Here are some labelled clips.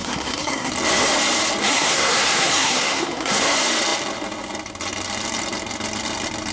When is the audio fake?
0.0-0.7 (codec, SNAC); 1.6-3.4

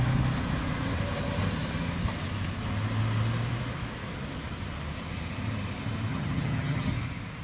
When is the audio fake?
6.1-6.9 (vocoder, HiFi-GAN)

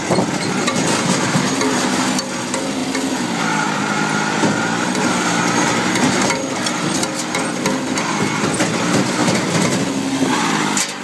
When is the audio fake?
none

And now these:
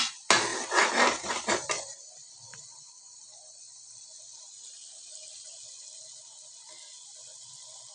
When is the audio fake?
none

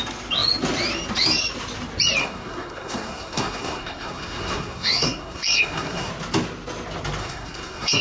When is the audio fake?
2.2-6.1 (codec, SNAC); 7.2-8.0

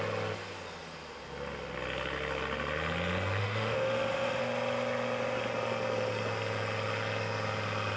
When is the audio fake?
3.4-4.4 (autoencoder, DAC-VAE)